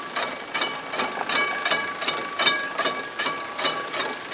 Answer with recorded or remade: recorded